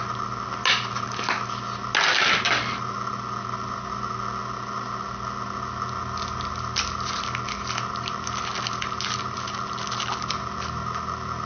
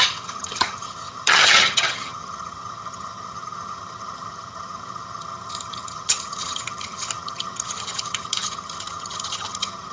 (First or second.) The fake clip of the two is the second